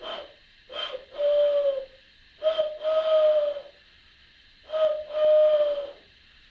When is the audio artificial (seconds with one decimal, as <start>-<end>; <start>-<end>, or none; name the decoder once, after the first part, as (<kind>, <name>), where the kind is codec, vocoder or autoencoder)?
none